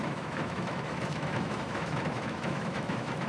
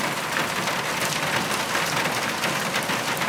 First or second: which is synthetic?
first